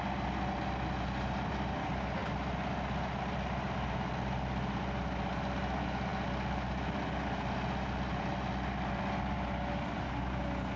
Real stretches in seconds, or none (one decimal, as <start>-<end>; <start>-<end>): 0.0-10.8